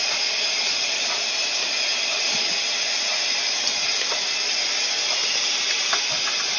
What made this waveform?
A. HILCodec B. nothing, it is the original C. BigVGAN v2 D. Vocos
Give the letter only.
B